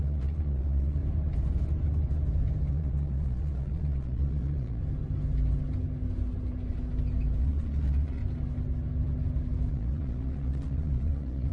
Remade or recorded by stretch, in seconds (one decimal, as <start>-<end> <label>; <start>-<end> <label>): 0.0-1.0 remade; 1.0-2.7 recorded; 2.7-4.8 remade; 4.8-7.4 recorded; 7.4-8.2 remade; 8.2-9.7 recorded; 9.7-11.5 remade